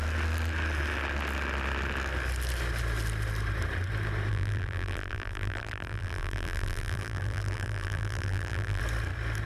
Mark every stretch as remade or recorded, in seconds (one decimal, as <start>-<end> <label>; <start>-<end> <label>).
0.0-4.3 recorded; 4.3-8.8 remade; 8.8-9.5 recorded